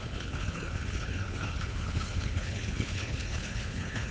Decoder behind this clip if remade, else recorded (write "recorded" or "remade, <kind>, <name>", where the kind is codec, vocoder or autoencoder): remade, codec, HILCodec